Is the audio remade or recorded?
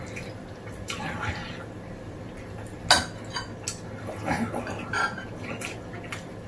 recorded